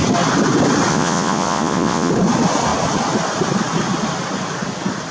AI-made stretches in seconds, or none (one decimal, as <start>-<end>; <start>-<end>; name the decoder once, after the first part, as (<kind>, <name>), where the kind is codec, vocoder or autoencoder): 0.9-2.1 (vocoder, Vocos)